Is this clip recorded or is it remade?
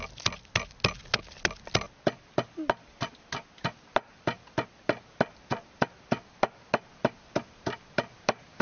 recorded